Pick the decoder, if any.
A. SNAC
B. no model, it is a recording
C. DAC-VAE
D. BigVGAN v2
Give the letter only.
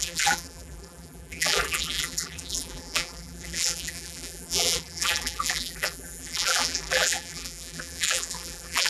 D